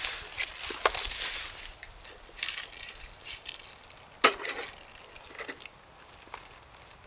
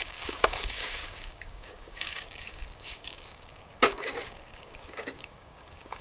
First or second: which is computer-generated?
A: second